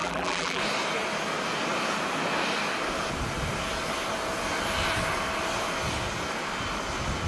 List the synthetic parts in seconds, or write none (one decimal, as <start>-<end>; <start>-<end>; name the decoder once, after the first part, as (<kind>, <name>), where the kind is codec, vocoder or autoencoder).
0.0-0.6 (vocoder, BigVGAN v2)

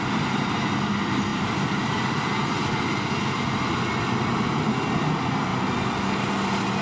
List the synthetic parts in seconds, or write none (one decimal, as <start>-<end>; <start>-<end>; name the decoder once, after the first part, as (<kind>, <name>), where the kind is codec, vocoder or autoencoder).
none

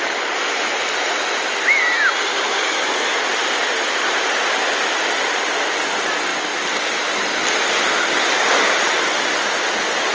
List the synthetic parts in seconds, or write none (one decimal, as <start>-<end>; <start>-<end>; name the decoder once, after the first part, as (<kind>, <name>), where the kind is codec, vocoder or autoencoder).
2.3-3.2 (autoencoder, DAC-VAE)

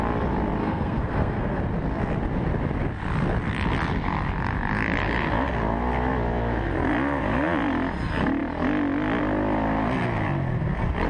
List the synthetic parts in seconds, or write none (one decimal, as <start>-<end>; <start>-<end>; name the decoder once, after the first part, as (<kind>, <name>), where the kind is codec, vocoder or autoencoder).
0.6-1.6 (codec, SNAC)